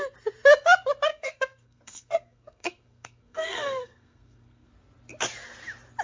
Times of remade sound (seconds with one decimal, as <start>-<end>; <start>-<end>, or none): 1.1-4.7